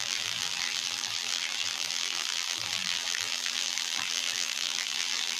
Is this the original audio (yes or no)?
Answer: no